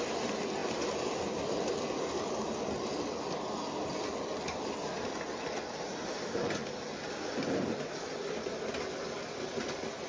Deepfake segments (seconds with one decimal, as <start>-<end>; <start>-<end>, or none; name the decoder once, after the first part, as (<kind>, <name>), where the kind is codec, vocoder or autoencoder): none